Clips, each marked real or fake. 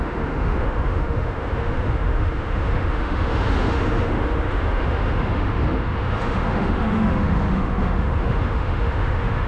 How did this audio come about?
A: fake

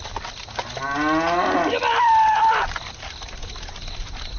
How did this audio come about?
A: real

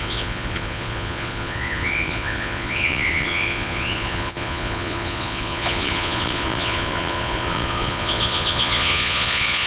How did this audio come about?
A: fake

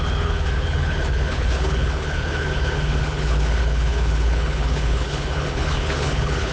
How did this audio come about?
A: fake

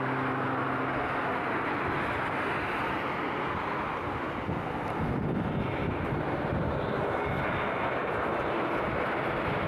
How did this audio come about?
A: real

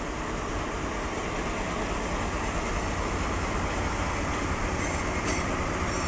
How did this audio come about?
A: real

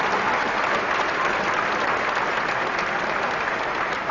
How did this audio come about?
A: real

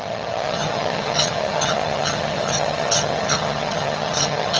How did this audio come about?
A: fake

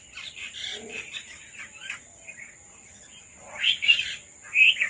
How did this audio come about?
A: real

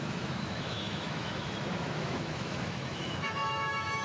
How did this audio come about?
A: fake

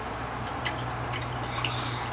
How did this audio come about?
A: real